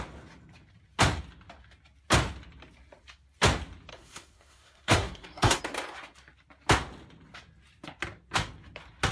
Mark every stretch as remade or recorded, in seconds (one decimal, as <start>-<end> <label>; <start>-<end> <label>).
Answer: 0.0-3.9 recorded; 3.9-5.6 remade; 5.6-9.1 recorded